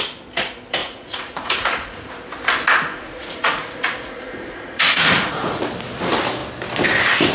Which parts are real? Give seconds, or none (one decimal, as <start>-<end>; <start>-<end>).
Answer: 0.0-0.8; 2.1-2.9; 5.6-7.3